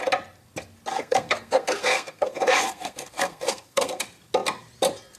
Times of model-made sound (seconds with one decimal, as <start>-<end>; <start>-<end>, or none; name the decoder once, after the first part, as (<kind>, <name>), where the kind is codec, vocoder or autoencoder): 0.9-4.0 (codec, SNAC)